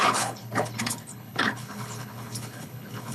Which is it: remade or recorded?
remade